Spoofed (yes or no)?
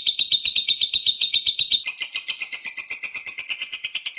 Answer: no